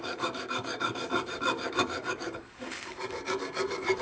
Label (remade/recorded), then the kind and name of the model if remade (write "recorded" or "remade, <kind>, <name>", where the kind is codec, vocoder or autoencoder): remade, codec, DAC